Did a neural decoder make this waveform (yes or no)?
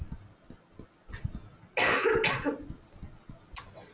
no